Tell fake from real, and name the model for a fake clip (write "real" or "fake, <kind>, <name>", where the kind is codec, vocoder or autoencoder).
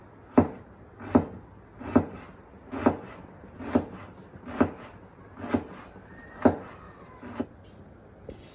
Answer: real